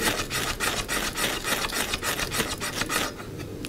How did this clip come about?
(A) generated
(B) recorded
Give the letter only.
B